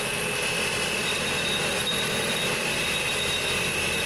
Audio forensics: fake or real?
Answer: fake